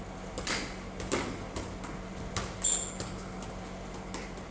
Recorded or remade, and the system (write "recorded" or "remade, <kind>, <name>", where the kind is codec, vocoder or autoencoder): recorded